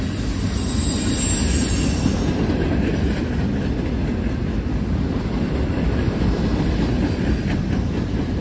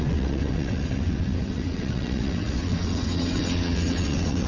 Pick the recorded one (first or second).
first